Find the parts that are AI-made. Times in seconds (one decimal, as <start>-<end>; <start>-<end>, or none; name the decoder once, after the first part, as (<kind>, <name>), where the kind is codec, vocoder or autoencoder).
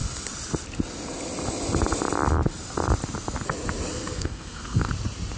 3.9-4.9 (codec, SNAC)